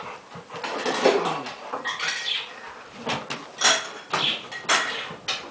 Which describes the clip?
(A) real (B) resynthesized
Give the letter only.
A